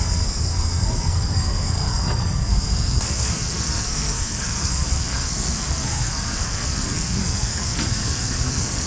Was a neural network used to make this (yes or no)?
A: yes